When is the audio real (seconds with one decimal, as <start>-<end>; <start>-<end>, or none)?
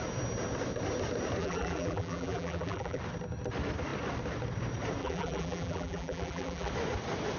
0.0-1.4; 3.0-5.0; 6.7-7.4